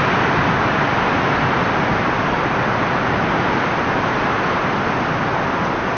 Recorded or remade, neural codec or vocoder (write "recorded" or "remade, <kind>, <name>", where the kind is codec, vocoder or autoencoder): recorded